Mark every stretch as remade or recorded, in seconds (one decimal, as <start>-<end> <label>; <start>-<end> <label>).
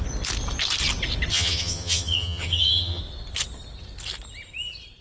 0.0-1.3 recorded; 1.3-3.0 remade; 3.0-5.0 recorded